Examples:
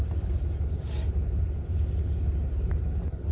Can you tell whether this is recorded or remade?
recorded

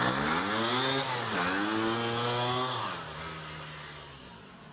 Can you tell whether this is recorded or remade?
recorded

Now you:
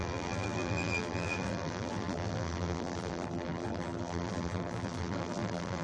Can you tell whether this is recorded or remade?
remade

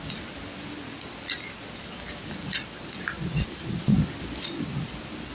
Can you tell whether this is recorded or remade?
remade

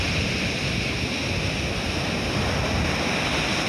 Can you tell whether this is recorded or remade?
recorded